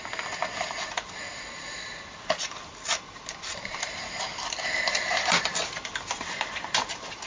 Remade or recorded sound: recorded